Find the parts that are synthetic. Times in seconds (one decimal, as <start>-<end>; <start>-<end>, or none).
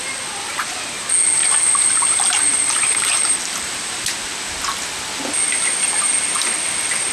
1.4-4.6